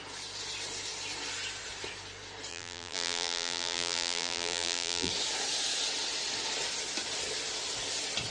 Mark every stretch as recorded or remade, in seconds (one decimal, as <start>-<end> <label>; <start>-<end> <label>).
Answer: 0.0-2.5 recorded; 2.5-5.1 remade; 5.1-8.3 recorded